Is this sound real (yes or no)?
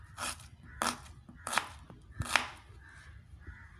yes